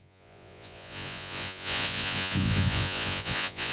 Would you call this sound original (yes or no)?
no